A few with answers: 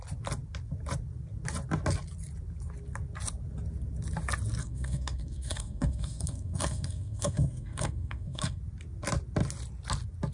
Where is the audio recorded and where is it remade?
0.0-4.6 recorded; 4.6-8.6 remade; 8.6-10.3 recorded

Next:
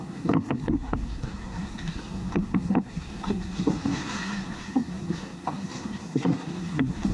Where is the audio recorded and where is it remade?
0.0-7.1 remade

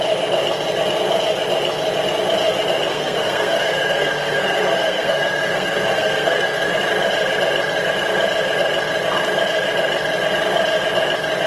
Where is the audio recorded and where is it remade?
0.0-2.9 recorded; 2.9-6.8 remade; 6.8-11.5 recorded

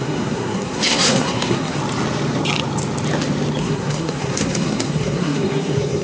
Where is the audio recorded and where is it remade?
0.0-1.8 remade; 1.8-3.6 recorded; 3.6-6.0 remade

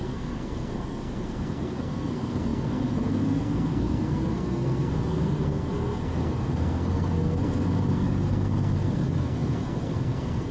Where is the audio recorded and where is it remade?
0.0-10.5 remade

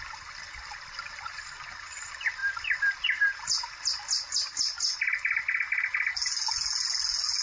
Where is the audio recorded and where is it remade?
0.0-7.4 recorded

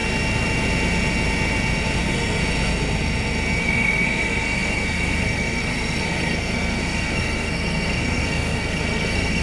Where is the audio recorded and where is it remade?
0.0-2.0 recorded; 2.0-2.4 remade; 2.4-3.6 recorded; 3.6-9.4 remade

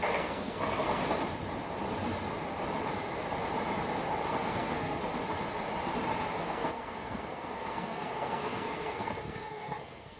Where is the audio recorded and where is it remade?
0.0-1.0 remade; 1.0-4.3 recorded; 4.3-5.0 remade; 5.0-6.3 recorded; 6.3-10.2 remade